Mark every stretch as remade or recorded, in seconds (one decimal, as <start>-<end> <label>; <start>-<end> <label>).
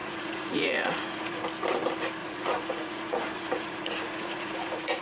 0.0-1.4 remade; 1.4-2.2 recorded; 2.2-5.0 remade